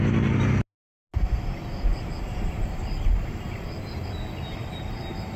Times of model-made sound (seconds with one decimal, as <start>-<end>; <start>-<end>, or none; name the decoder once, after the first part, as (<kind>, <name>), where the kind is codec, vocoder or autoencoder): 1.9-5.4 (vocoder, BigVGAN v2)